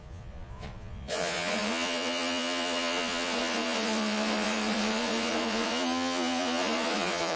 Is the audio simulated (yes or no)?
yes